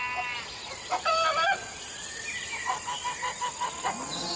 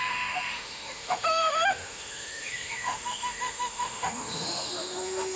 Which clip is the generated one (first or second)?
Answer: second